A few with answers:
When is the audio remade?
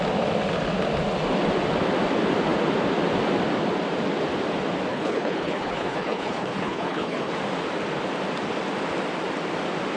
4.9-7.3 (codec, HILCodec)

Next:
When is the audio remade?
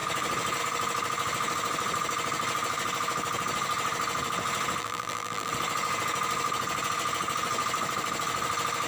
4.8-5.5 (vocoder, BigVGAN v2)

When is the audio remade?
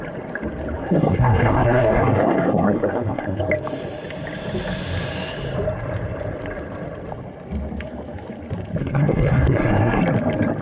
0.8-3.4 (codec, SNAC); 8.8-10.0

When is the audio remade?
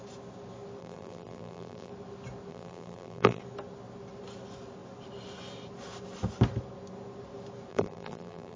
0.8-1.9 (vocoder, BigVGAN v2); 2.5-3.4; 7.7-8.6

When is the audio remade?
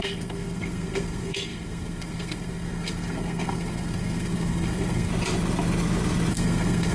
0.0-5.1 (codec, SNAC); 6.3-6.9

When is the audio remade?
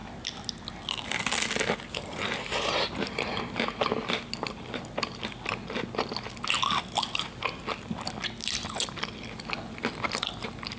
none